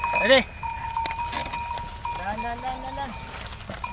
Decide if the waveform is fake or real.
real